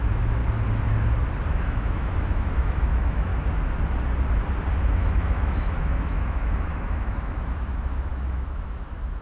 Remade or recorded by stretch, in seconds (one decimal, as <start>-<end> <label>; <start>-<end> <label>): 0.0-0.4 remade; 0.4-1.5 recorded; 1.5-3.3 remade; 3.3-4.9 recorded; 4.9-9.2 remade